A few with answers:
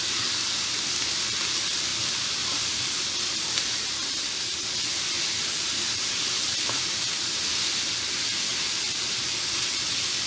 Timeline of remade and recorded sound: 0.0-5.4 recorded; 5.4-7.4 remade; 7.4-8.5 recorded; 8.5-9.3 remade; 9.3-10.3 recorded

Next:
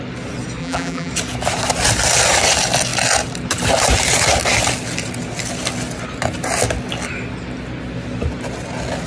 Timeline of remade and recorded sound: 0.0-0.6 recorded; 0.6-1.1 remade; 1.1-9.1 recorded

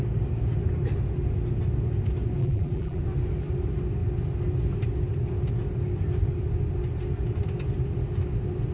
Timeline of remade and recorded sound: 0.0-2.4 recorded; 2.4-3.0 remade; 3.0-8.7 recorded

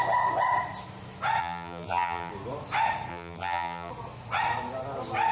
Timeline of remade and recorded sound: 0.0-1.4 recorded; 1.4-2.3 remade; 2.3-3.1 recorded; 3.1-3.9 remade; 3.9-5.3 recorded

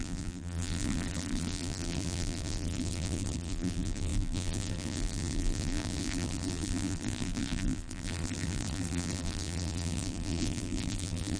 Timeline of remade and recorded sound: 0.0-11.4 remade

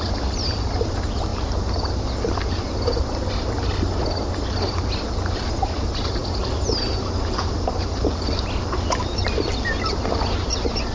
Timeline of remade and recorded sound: 0.0-10.9 recorded